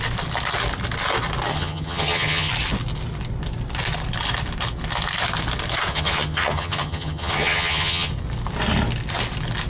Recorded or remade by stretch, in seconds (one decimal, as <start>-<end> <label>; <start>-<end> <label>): 0.0-1.5 recorded; 1.5-2.5 remade; 2.5-5.9 recorded; 5.9-8.1 remade; 8.1-9.7 recorded